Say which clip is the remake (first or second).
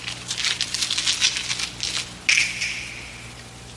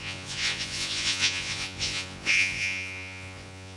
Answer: second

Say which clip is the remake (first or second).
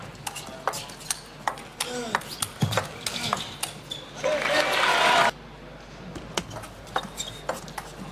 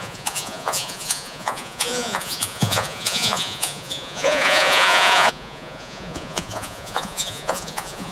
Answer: second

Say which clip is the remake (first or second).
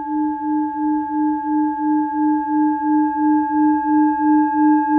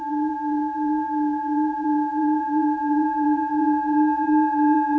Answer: second